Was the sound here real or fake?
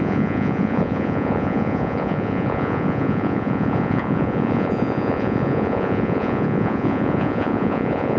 fake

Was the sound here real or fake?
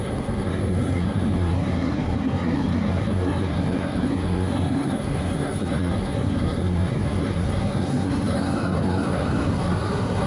fake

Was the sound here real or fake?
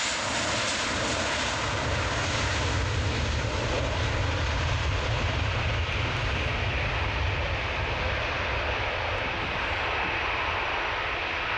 real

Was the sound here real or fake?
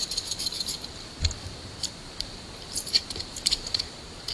fake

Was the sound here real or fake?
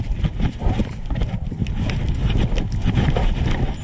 real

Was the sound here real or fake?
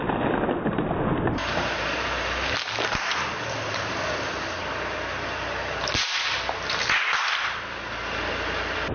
real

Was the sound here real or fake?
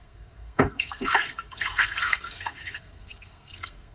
fake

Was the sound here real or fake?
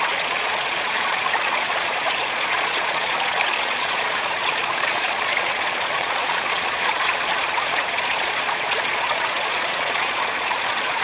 fake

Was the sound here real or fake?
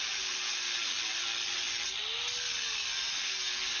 real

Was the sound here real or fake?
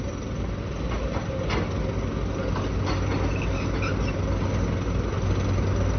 real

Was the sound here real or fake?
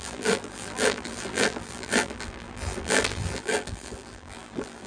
fake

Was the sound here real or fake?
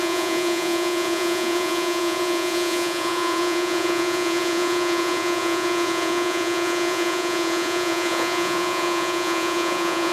fake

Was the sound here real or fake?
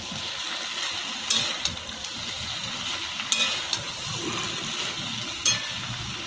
real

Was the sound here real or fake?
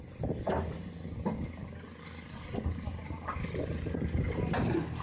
real